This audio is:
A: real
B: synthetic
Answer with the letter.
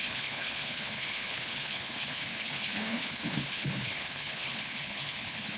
B